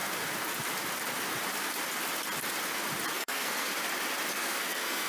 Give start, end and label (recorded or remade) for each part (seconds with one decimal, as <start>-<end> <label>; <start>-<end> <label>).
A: 0.0-3.1 recorded; 3.1-3.7 remade; 3.7-4.3 recorded; 4.3-5.1 remade